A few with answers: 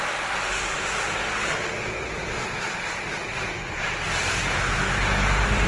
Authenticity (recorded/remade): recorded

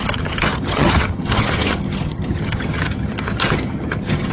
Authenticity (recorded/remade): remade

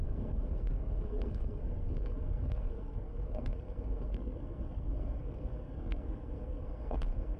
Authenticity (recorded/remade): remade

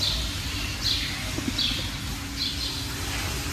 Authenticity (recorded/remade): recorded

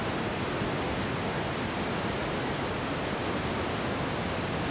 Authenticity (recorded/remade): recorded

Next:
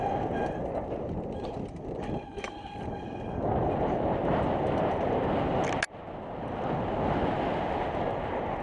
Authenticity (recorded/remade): recorded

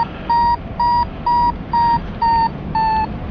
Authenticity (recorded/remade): recorded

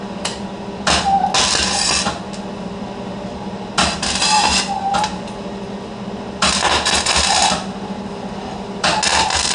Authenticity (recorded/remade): recorded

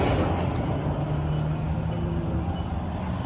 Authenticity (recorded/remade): recorded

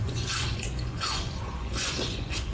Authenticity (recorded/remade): remade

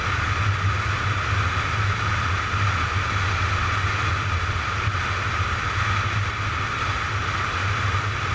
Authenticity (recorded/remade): recorded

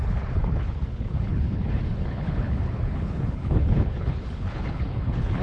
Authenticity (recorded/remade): remade